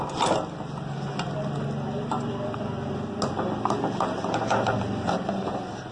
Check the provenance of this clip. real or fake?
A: real